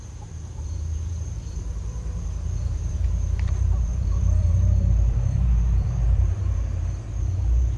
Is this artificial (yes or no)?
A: yes